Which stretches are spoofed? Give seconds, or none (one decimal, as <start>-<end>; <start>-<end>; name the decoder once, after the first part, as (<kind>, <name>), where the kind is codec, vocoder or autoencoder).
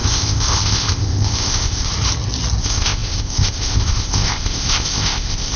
0.0-1.9 (codec, ZipCodec); 2.6-5.6